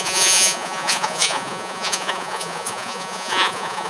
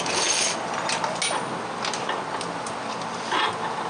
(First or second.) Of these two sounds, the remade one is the first